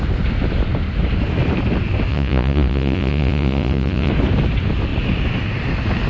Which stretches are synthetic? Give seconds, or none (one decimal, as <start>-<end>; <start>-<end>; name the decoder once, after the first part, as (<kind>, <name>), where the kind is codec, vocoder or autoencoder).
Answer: 2.1-4.1 (vocoder, Vocos)